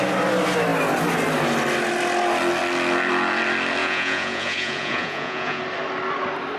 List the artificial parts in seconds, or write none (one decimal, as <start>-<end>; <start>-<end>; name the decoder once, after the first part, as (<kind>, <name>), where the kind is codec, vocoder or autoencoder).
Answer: 3.8-5.6 (vocoder, Vocos)